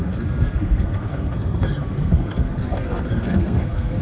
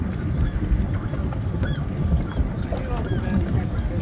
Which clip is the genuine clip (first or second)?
second